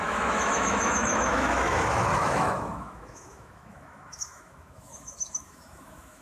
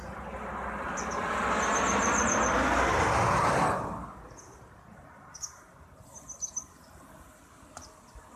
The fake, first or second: first